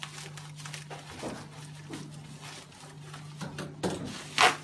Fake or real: real